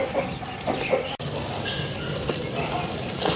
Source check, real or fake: real